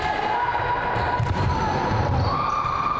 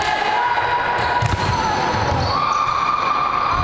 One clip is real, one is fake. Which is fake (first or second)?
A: first